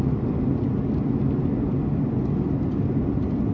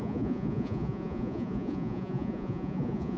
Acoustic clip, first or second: first